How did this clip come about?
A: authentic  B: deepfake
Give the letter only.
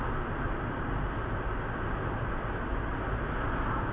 A